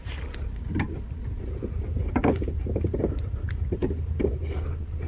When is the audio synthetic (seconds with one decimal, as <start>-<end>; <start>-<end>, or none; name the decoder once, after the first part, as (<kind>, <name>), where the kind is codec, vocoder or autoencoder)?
none